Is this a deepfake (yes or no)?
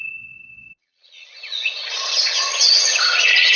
yes